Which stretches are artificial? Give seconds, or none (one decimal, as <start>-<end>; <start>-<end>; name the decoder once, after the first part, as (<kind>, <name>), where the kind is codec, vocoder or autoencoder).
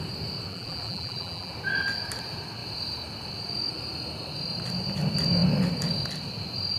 0.5-1.5 (vocoder, BigVGAN v2)